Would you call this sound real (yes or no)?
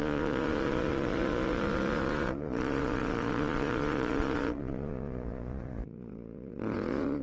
no